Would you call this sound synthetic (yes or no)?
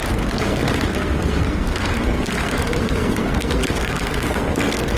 yes